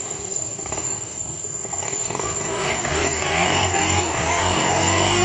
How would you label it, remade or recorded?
remade